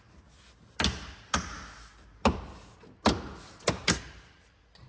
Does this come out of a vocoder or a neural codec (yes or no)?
no